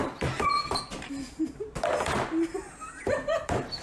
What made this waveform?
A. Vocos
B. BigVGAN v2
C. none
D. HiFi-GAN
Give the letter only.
B